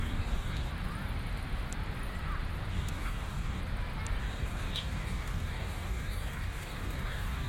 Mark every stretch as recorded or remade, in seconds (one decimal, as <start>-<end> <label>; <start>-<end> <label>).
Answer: 0.0-0.7 remade; 0.7-2.7 recorded; 2.7-3.6 remade; 3.6-4.2 recorded; 4.2-7.5 remade